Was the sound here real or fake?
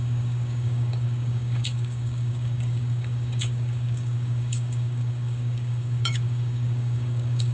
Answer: fake